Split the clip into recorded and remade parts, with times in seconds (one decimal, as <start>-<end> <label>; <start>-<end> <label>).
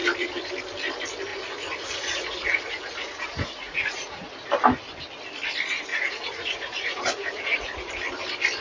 0.0-1.3 recorded; 1.3-4.3 remade; 4.3-5.9 recorded; 5.9-7.9 remade; 7.9-8.6 recorded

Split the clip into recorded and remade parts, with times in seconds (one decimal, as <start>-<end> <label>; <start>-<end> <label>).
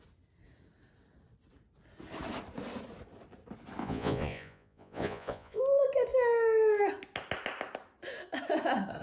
0.0-3.8 recorded; 3.8-5.6 remade; 5.6-9.0 recorded